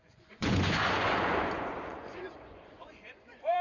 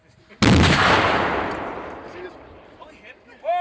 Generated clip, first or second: first